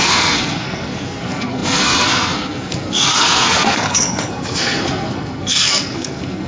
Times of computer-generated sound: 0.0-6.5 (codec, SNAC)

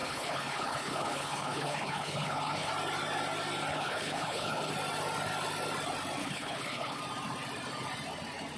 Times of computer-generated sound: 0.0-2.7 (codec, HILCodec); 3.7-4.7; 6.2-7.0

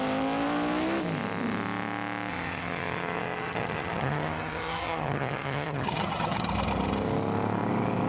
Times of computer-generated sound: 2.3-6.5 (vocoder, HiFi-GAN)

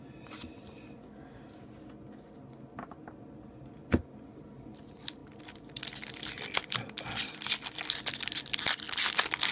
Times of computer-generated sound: none

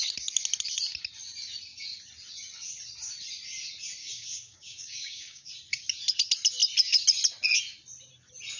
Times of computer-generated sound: 4.0-5.5 (codec, DAC)

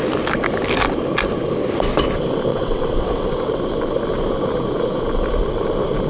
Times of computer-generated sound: 2.5-3.6 (vocoder, WaveNeXt)